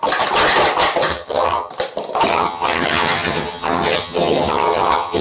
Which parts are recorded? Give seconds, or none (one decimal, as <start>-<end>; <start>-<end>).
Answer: 0.0-1.1; 1.7-2.3